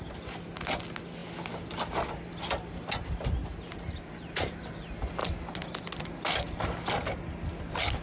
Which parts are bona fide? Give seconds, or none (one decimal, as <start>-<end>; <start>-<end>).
0.0-8.0